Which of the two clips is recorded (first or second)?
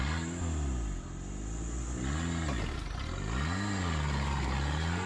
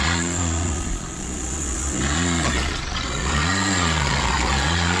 first